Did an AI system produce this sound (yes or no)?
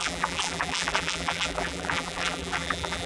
yes